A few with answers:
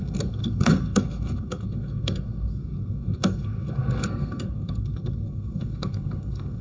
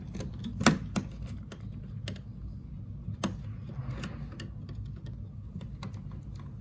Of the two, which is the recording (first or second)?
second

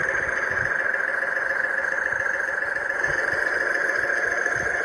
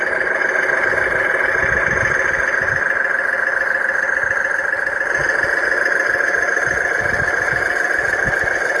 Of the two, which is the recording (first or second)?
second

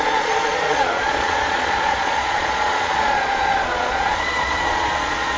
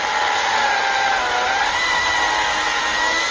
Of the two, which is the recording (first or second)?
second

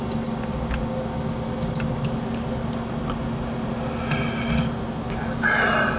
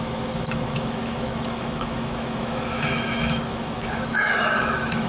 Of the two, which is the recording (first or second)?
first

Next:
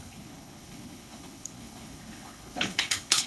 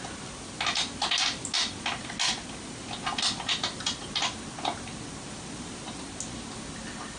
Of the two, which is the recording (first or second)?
second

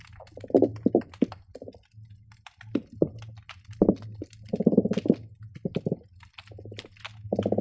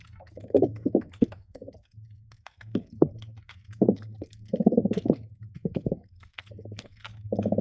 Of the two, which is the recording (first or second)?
first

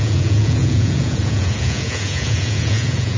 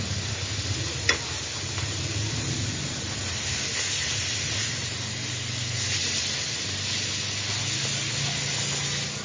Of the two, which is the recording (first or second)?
second